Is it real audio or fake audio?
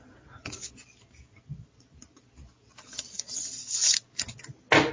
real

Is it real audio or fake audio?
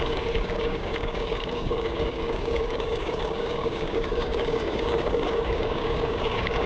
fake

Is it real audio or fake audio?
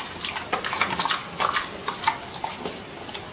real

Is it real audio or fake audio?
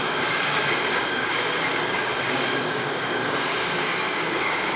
fake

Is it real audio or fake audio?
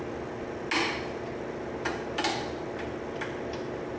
real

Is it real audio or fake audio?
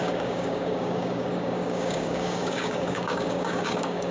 fake